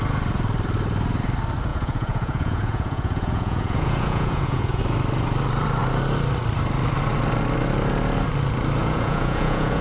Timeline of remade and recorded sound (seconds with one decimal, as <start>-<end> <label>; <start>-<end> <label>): 0.0-1.7 recorded; 1.7-4.8 remade; 4.8-8.8 recorded; 8.8-9.8 remade